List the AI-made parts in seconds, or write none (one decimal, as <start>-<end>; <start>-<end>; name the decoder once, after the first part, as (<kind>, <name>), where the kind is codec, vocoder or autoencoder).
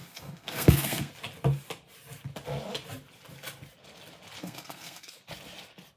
0.0-1.1 (codec, SNAC); 4.4-5.2